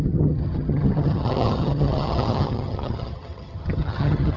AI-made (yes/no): yes